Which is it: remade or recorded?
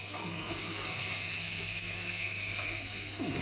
remade